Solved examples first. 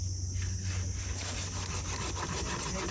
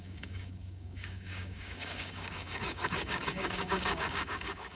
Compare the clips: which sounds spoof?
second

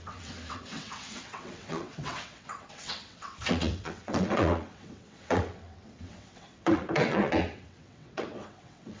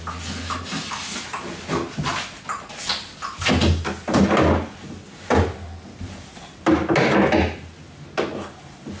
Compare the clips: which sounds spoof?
first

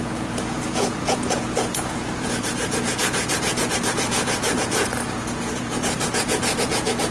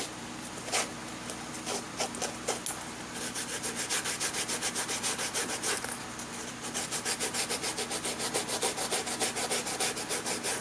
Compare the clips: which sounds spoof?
first